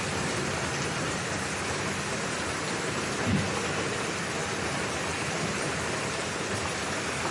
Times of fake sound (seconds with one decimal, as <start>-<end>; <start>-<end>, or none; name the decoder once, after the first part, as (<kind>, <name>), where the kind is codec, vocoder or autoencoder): none